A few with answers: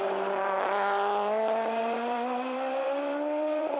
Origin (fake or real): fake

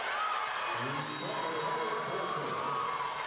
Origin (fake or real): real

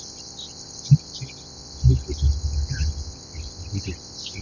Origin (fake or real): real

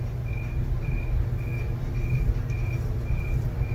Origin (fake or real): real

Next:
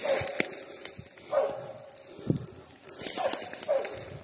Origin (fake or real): real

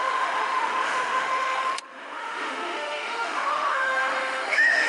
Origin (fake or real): fake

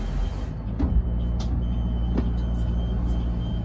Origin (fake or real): real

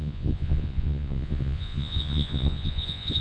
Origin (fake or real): fake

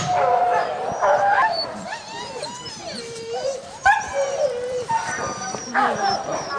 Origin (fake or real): fake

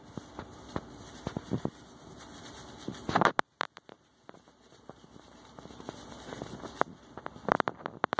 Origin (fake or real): real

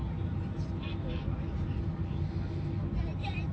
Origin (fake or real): real